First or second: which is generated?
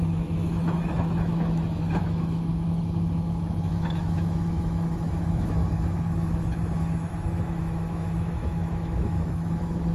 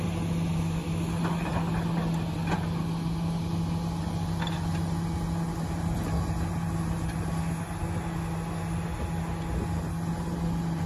first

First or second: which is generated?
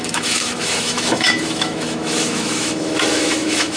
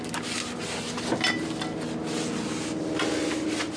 first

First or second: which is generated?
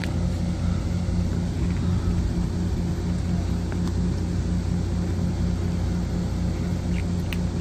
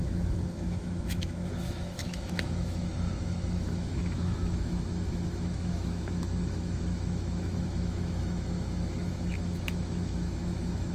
second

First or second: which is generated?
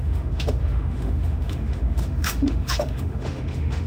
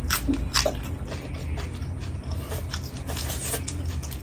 first